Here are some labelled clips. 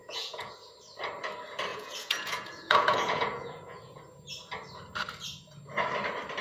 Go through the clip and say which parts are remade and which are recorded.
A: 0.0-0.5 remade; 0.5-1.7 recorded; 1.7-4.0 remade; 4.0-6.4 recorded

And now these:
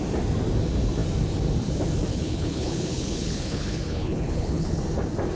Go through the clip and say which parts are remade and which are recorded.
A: 0.0-2.1 recorded; 2.1-4.8 remade; 4.8-5.4 recorded